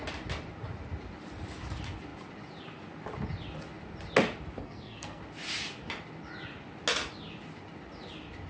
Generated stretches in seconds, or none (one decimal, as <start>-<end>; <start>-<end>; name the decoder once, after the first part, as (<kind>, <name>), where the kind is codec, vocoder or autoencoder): 4.6-5.2 (codec, SNAC)

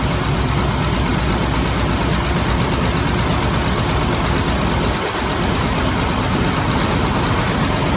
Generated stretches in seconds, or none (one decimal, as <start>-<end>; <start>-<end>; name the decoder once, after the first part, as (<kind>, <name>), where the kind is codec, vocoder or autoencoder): none

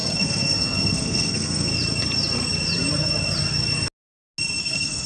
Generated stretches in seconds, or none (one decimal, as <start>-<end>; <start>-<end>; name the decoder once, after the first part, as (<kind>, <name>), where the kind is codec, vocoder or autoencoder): 0.0-1.7 (codec, SNAC); 4.6-5.1

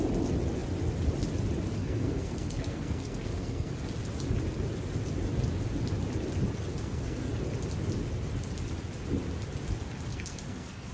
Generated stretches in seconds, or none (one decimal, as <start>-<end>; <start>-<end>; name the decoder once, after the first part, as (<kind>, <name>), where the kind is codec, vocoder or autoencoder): 1.8-3.7 (codec, SNAC); 6.7-7.3; 10.1-10.9